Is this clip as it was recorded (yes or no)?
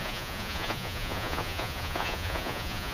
no